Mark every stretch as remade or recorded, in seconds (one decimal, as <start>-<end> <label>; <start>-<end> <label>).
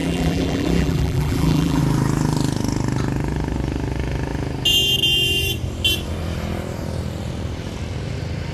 0.0-1.8 remade; 1.8-8.5 recorded